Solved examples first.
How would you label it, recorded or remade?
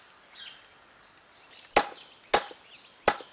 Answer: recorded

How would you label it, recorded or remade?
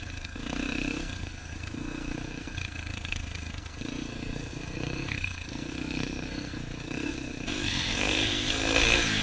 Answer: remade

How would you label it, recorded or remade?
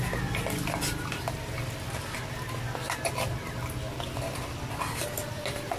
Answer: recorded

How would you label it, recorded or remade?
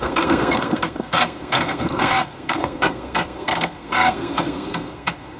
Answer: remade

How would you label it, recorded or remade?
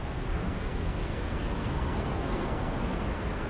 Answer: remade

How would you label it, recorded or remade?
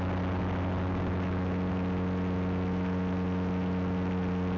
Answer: recorded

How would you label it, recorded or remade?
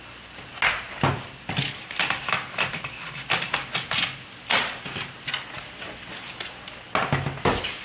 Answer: recorded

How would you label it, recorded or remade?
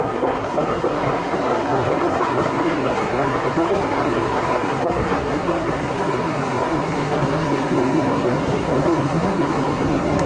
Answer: remade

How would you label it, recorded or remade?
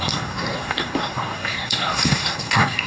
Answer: remade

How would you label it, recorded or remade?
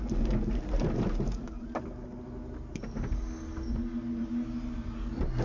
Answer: recorded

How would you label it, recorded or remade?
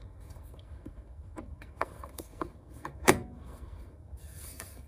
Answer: remade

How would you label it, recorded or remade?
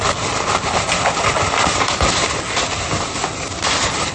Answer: recorded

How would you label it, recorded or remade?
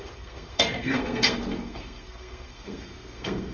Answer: remade